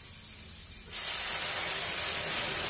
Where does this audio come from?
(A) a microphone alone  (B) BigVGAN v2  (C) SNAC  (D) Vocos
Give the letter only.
A